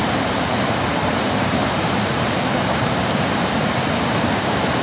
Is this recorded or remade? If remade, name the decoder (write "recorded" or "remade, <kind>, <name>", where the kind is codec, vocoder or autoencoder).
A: remade, vocoder, BigVGAN v2